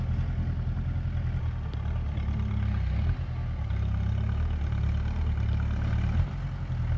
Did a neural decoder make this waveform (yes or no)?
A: no